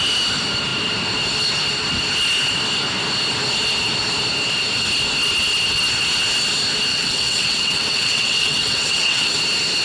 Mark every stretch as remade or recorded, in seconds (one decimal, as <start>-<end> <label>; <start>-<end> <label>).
0.0-6.9 recorded; 6.9-9.4 remade; 9.4-9.8 recorded